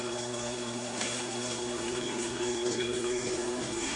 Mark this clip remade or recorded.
remade